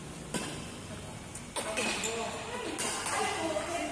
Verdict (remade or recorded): recorded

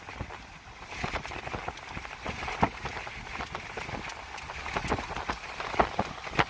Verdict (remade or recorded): recorded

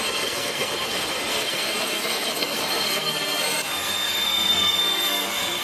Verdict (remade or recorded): remade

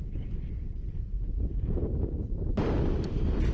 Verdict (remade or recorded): recorded